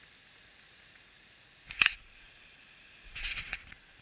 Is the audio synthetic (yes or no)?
yes